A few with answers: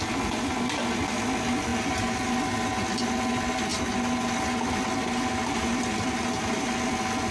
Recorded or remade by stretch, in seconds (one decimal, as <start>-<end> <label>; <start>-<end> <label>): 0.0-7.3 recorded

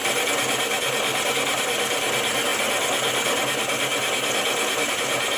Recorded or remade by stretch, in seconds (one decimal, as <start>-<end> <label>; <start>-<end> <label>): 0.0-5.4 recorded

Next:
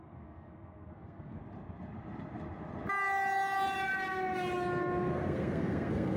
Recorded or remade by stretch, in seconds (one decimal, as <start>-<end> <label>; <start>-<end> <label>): 0.0-1.4 remade; 1.4-5.1 recorded; 5.1-6.2 remade

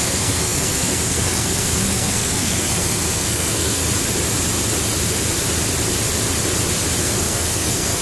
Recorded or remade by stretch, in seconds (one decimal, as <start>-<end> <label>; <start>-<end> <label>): 0.0-3.8 remade; 3.8-7.0 recorded; 7.0-8.0 remade

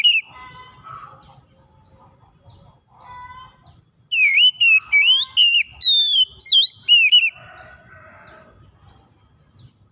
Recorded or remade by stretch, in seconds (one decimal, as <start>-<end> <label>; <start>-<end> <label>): 0.0-9.9 recorded

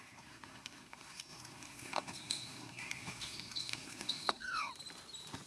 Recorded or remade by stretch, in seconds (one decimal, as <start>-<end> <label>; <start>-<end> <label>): 0.0-4.7 remade; 4.7-5.5 recorded